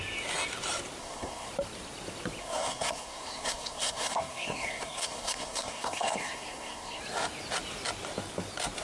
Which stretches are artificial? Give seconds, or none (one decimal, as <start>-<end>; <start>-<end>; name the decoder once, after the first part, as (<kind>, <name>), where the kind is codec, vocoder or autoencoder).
1.0-1.5 (codec, SNAC); 2.4-7.0